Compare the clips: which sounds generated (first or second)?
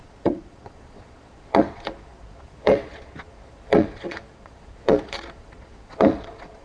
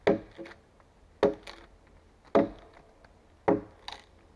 first